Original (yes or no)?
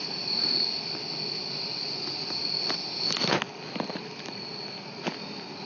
yes